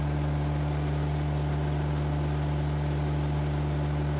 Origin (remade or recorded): recorded